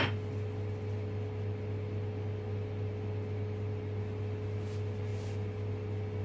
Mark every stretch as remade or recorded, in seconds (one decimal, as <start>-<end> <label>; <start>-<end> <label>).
0.0-6.2 recorded